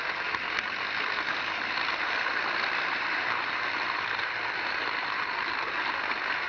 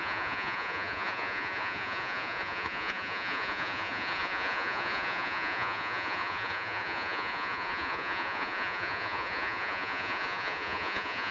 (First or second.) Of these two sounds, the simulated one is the second